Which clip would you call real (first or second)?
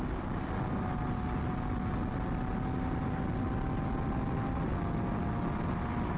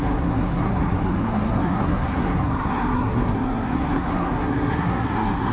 first